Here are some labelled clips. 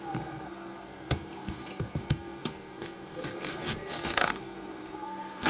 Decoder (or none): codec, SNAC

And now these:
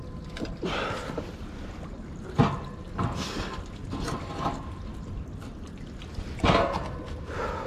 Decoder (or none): none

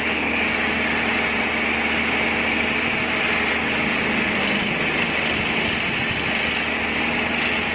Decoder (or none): none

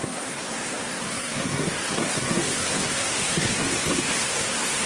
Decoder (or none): codec, SNAC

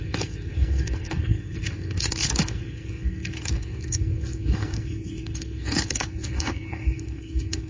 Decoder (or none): codec, SNAC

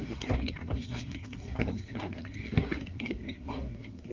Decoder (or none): codec, SNAC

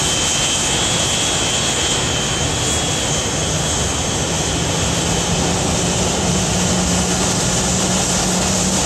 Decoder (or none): none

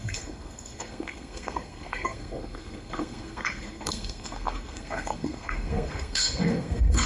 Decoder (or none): codec, SNAC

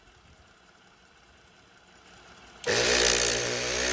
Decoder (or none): none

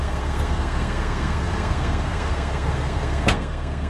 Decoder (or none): codec, SNAC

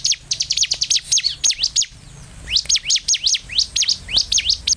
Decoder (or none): none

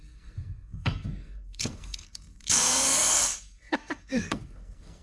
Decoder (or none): codec, SNAC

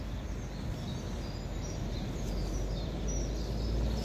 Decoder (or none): none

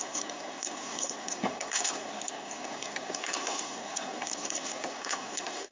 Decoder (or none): codec, SNAC